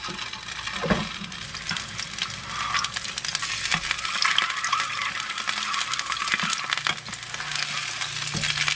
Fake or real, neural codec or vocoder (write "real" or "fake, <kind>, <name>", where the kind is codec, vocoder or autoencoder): real